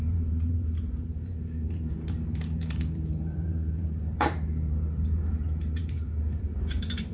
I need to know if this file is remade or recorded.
remade